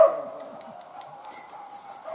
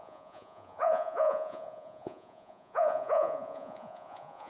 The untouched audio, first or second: first